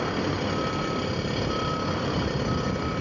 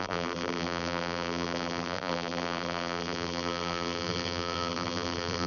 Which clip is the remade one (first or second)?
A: second